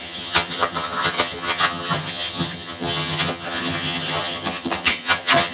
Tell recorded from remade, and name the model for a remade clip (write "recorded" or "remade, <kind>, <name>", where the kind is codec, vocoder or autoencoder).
remade, vocoder, HiFi-GAN